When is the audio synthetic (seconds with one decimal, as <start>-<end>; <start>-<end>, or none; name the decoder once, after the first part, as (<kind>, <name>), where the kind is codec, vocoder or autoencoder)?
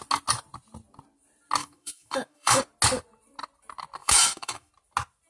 1.6-2.6 (autoencoder, DAC-VAE); 4.0-4.7